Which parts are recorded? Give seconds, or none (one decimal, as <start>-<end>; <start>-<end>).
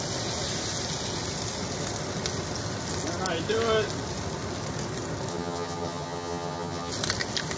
0.0-5.3; 6.9-7.6